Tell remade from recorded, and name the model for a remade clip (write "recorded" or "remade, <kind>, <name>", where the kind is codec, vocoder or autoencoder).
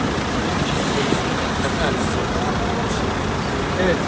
recorded